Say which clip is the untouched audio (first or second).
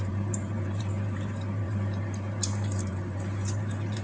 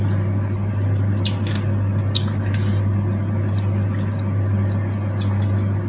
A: second